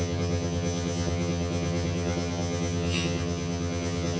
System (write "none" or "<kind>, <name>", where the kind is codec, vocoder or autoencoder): vocoder, HiFi-GAN